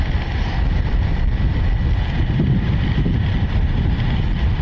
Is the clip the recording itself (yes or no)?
yes